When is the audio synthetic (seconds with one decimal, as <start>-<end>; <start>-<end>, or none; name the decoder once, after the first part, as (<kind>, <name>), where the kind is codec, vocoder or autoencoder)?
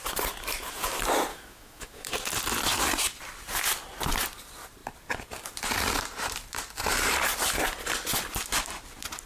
1.3-2.1 (autoencoder, DAC-VAE)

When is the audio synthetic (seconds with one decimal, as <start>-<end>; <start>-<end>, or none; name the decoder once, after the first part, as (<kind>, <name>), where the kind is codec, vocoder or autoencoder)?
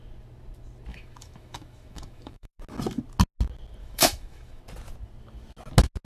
0.9-2.6 (autoencoder, DAC-VAE); 3.8-4.6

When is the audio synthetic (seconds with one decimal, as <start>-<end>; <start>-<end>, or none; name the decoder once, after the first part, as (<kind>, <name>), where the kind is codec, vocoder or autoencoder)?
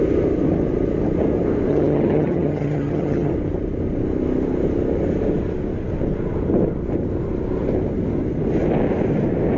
1.7-3.3 (vocoder, HiFi-GAN)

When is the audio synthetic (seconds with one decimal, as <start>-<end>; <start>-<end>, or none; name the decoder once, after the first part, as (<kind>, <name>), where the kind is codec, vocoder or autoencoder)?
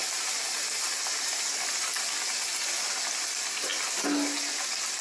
none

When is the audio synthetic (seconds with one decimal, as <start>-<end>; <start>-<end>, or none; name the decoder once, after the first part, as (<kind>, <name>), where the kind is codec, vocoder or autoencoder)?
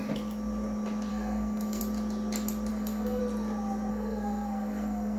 1.1-1.8 (codec, SNAC); 2.7-3.2; 3.9-5.2